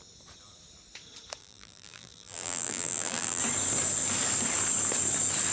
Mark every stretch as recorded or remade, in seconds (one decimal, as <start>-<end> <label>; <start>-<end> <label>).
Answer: 0.0-1.4 recorded; 1.4-3.4 remade; 3.4-5.5 recorded